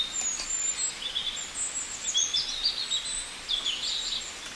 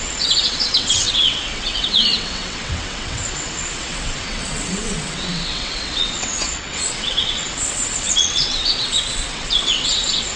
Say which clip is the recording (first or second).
first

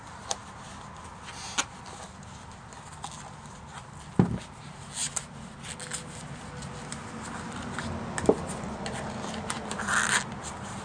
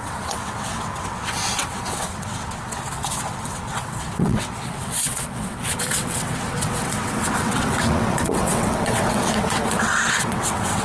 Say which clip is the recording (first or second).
first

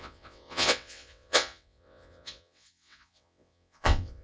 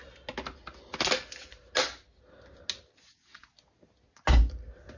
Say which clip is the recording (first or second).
second